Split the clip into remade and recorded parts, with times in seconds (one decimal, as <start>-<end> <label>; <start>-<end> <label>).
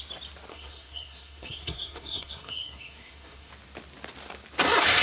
0.0-0.5 recorded; 0.5-3.5 remade; 3.5-5.0 recorded